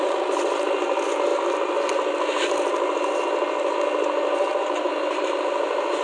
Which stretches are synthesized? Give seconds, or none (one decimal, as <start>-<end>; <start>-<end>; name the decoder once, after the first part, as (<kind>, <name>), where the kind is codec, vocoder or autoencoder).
none